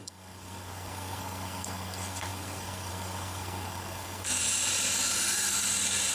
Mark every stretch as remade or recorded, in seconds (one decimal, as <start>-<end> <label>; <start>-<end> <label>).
0.0-4.4 remade; 4.4-6.1 recorded